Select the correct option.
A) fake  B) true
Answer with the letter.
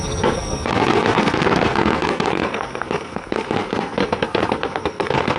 A